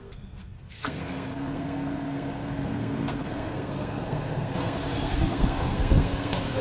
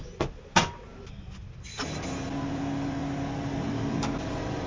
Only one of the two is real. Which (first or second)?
second